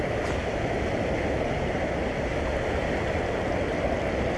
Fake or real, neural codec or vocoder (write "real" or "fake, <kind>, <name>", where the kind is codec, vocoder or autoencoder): real